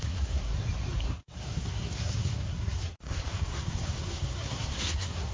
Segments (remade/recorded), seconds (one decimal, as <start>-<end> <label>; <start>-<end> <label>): 0.0-0.5 remade; 0.5-1.0 recorded; 1.0-5.3 remade